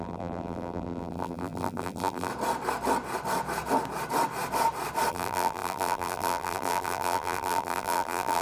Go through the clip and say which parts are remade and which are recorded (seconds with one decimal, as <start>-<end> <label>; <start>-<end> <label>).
0.0-2.3 remade; 2.3-5.1 recorded; 5.1-8.4 remade